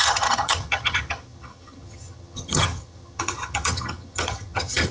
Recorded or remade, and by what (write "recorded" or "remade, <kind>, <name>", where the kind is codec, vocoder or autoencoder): remade, vocoder, HiFi-GAN